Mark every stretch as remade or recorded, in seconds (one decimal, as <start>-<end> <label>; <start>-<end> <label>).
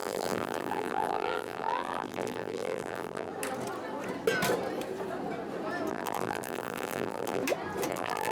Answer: 0.0-3.3 remade; 3.3-5.9 recorded; 5.9-7.4 remade; 7.4-7.9 recorded; 7.9-8.3 remade